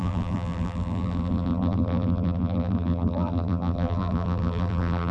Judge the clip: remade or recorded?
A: remade